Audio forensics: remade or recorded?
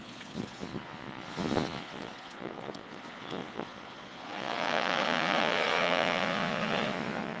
remade